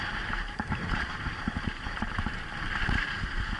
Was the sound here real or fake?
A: fake